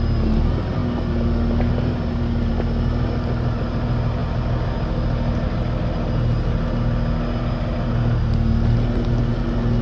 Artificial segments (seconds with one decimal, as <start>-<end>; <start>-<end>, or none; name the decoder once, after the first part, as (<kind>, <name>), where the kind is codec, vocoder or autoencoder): none